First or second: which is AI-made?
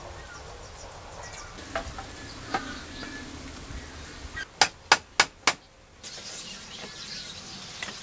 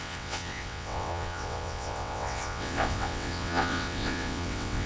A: second